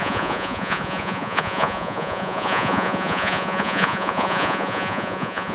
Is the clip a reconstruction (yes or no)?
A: yes